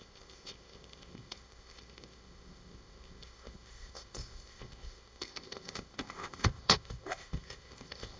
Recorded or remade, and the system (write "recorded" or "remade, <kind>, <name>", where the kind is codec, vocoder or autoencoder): remade, codec, ZipCodec